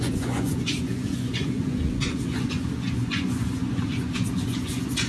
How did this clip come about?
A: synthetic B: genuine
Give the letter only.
A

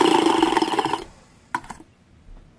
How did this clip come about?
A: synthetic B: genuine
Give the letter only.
B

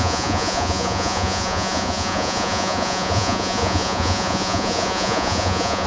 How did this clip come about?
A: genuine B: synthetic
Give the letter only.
B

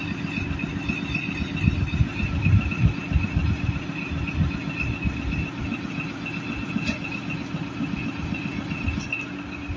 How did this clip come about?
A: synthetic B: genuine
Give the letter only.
B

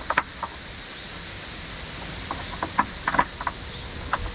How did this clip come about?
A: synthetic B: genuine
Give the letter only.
B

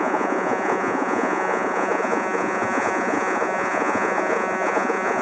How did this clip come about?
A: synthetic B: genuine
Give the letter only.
A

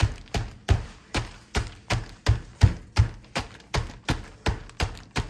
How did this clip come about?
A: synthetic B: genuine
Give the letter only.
B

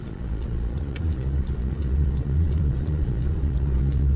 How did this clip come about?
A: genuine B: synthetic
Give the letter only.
B